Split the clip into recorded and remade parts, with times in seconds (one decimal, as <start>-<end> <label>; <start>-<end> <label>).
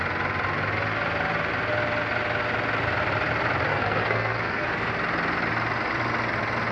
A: 0.0-3.7 recorded; 3.7-4.9 remade; 4.9-6.7 recorded